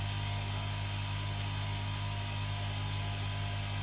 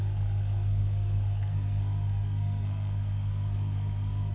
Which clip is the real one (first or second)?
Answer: first